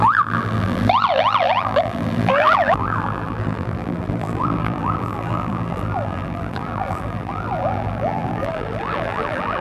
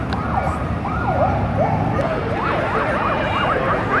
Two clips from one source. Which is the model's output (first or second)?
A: first